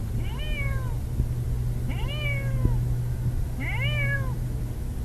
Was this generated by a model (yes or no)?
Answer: no